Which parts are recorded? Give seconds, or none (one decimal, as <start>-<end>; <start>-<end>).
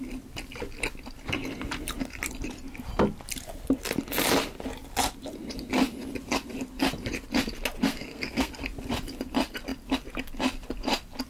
0.0-7.9; 8.5-11.3